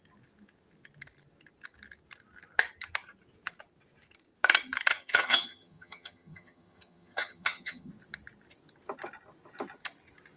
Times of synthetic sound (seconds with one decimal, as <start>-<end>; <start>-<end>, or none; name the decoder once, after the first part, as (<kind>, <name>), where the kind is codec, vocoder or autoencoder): 4.9-7.9 (vocoder, HiFi-GAN)